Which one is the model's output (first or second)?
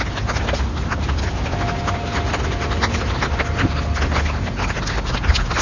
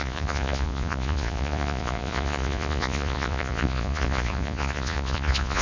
second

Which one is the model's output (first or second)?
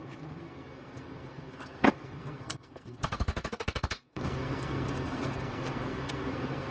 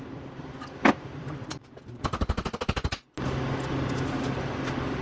first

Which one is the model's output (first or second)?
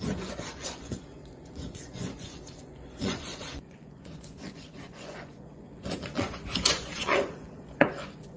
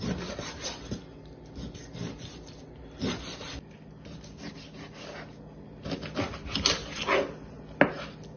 first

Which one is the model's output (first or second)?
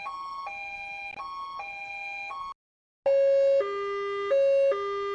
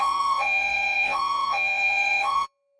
second